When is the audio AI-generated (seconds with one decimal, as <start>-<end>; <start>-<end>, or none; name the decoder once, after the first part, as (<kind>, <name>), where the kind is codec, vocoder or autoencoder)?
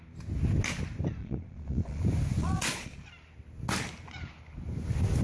1.2-2.0 (vocoder, Vocos); 2.4-3.0